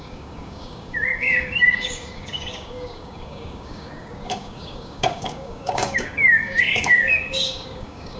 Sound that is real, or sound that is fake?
fake